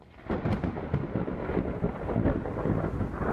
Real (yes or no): yes